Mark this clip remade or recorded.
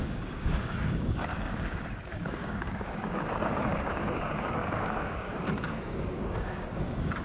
remade